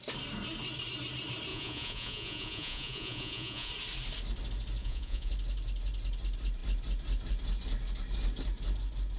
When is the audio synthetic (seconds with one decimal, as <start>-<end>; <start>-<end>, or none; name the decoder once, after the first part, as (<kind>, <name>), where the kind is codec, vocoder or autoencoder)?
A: 1.5-3.7 (vocoder, Vocos); 4.8-5.3